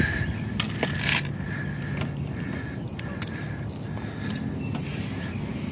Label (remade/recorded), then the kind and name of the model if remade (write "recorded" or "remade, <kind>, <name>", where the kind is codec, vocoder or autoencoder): recorded